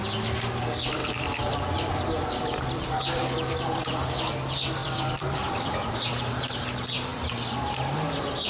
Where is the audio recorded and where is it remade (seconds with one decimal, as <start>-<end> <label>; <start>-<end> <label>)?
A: 0.0-1.0 recorded; 1.0-3.0 remade; 3.0-4.8 recorded; 4.8-5.9 remade; 5.9-8.5 recorded